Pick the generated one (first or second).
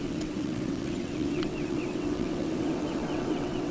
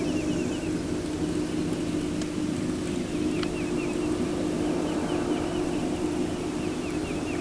first